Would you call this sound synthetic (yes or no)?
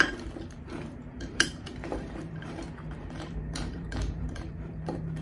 yes